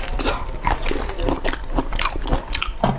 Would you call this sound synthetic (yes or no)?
no